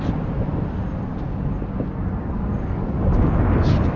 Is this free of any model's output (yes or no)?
yes